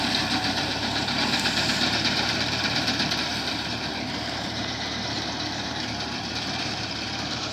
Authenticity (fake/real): fake